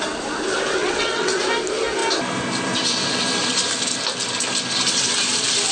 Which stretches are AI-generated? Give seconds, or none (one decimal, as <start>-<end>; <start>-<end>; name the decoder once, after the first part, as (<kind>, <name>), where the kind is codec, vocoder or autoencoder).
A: 0.8-1.4 (vocoder, WaveNeXt)